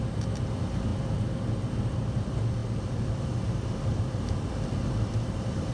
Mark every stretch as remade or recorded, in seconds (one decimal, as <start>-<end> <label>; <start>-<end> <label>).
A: 0.0-3.9 recorded; 3.9-4.5 remade; 4.5-5.7 recorded